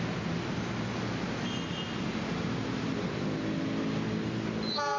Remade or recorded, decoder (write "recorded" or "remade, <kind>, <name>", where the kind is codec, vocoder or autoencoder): recorded